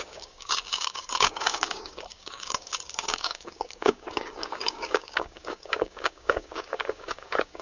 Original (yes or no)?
no